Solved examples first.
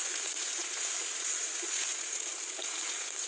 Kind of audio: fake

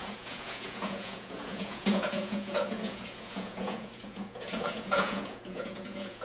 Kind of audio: fake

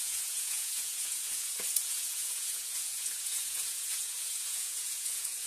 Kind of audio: fake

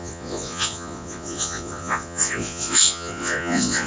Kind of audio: fake